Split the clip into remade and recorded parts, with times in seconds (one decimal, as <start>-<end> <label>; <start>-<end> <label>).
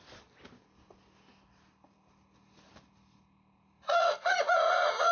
0.0-3.9 recorded; 3.9-5.1 remade